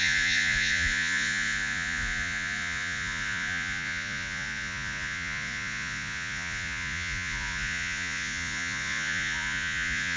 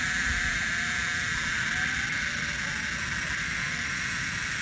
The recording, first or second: second